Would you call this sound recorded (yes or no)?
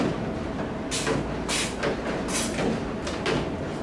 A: yes